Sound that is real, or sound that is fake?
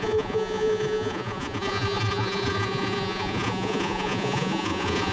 fake